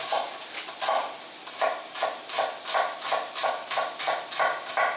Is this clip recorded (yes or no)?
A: yes